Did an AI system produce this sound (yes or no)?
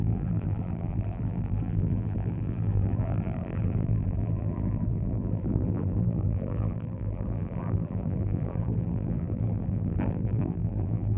yes